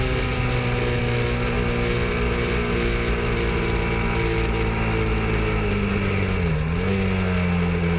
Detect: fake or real real